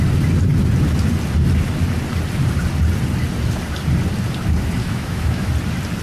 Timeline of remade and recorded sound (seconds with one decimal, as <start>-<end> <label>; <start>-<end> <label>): 0.0-4.8 recorded; 4.8-5.5 remade; 5.5-6.0 recorded